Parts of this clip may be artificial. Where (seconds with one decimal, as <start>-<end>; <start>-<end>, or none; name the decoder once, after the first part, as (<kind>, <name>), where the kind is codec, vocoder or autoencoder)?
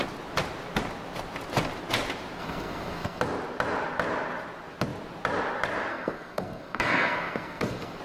2.4-3.2 (codec, SNAC); 5.9-8.0